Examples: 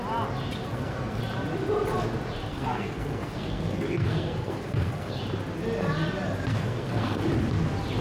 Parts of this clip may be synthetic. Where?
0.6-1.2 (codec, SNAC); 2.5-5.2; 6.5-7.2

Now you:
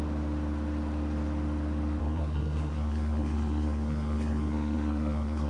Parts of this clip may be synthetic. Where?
2.0-5.5 (codec, SNAC)

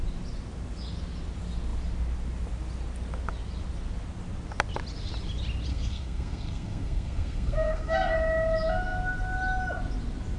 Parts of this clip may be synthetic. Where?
5.7-8.1 (codec, SNAC)

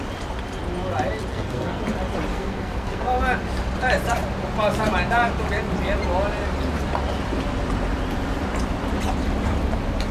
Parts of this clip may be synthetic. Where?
1.3-1.8 (codec, SNAC); 2.3-3.0

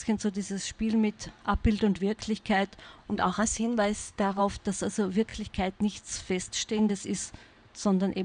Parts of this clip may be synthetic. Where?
3.0-4.4 (codec, SNAC)

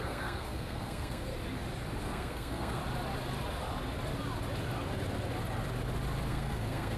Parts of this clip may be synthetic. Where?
0.0-1.3 (codec, SNAC); 2.0-2.8; 6.3-7.0

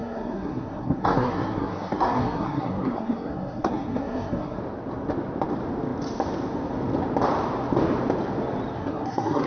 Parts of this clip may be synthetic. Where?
0.0-4.6 (codec, SNAC); 8.8-9.5